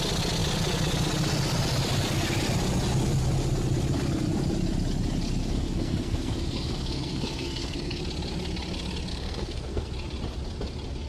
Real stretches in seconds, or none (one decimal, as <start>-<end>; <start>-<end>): 0.0-5.4; 8.0-9.1; 9.9-11.1